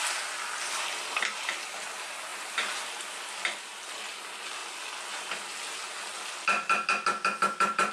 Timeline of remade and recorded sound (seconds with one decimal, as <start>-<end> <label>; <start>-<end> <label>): 0.0-2.3 recorded; 2.3-2.8 remade; 2.8-7.9 recorded